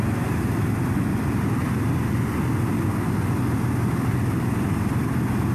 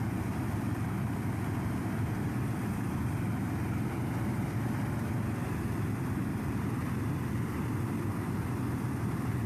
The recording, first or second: first